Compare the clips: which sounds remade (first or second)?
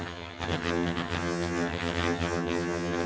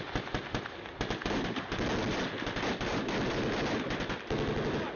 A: first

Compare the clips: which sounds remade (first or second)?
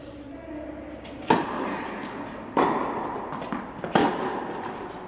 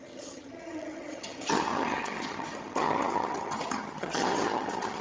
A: second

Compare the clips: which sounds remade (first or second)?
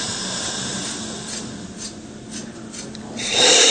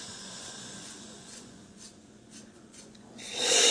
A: second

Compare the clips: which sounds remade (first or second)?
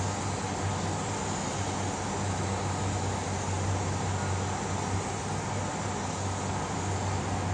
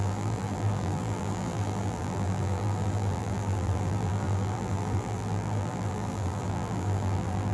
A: second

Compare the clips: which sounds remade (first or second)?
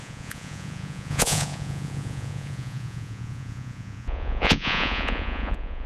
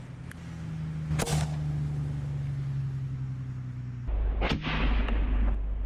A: first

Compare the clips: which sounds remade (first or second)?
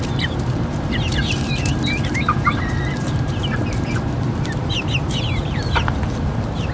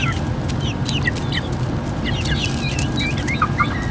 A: first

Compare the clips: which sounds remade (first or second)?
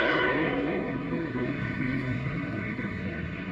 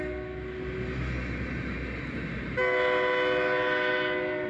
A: first